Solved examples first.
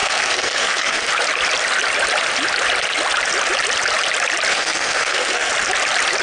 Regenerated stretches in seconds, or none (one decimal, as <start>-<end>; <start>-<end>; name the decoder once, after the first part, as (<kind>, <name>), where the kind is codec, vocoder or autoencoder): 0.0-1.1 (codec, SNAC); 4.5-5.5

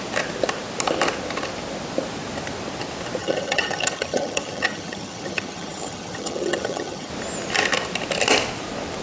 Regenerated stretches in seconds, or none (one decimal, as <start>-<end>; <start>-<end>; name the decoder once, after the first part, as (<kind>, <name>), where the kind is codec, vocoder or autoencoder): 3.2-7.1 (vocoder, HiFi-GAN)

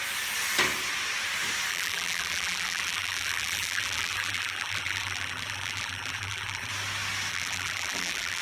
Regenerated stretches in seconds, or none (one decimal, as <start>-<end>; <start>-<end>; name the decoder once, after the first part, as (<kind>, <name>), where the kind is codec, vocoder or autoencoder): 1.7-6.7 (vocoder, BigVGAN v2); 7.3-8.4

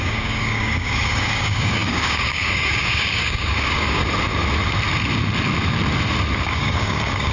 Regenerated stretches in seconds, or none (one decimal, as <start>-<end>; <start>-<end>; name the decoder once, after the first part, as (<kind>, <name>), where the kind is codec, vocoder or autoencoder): 0.0-4.0 (codec, DAC); 6.4-7.3

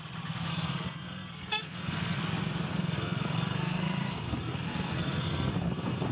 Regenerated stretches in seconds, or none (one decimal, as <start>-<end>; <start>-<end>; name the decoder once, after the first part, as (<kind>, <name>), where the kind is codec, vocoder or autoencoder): 0.5-2.2 (codec, SNAC); 2.7-6.1